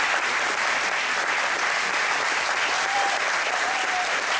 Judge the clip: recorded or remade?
remade